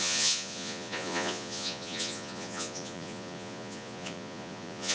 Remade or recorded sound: remade